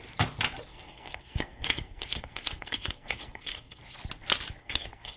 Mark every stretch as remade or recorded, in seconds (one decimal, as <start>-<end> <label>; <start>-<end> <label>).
0.0-0.7 recorded; 0.7-3.8 remade; 3.8-4.6 recorded; 4.6-5.2 remade

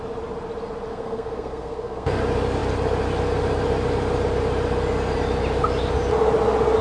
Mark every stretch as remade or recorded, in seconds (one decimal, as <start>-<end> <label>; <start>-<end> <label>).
0.0-0.9 recorded; 0.9-2.2 remade; 2.2-6.8 recorded

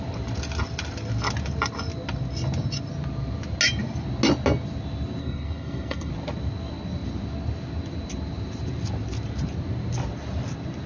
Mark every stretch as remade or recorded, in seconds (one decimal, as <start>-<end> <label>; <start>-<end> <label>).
0.0-5.2 recorded; 5.2-6.1 remade; 6.1-10.9 recorded